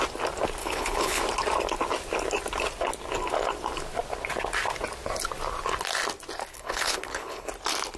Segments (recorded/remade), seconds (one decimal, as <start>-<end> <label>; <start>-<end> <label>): 0.0-0.6 recorded; 0.6-1.2 remade; 1.2-6.5 recorded; 6.5-7.5 remade; 7.5-8.0 recorded